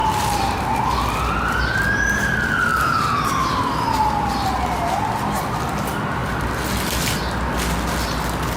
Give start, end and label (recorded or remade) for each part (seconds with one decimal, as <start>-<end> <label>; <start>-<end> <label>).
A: 0.0-0.6 remade; 0.6-2.7 recorded; 2.7-3.5 remade; 3.5-8.6 recorded